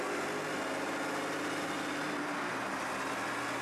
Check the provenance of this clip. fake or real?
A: real